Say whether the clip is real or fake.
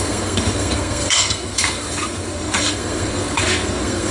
fake